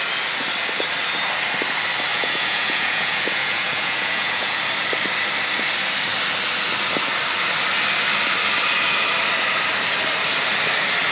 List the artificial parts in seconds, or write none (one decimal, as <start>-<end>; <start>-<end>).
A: 2.1-4.6